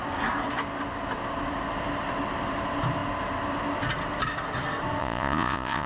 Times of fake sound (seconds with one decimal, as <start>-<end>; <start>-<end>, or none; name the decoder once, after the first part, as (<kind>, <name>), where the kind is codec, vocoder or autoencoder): 5.0-5.9 (vocoder, Vocos)